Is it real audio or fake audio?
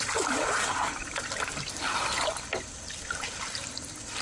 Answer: real